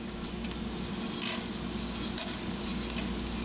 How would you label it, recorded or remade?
recorded